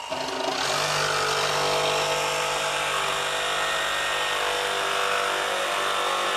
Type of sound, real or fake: real